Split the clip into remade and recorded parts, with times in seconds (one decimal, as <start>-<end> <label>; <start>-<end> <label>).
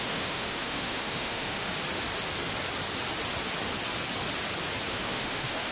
0.0-1.7 remade; 1.7-4.9 recorded; 4.9-5.7 remade